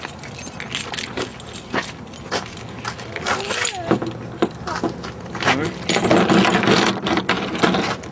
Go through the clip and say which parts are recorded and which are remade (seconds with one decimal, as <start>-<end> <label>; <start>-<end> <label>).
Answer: 0.0-8.1 recorded